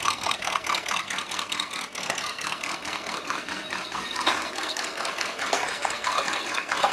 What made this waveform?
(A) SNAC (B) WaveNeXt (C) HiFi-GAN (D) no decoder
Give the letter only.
A